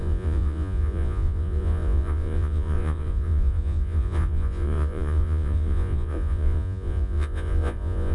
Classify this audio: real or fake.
fake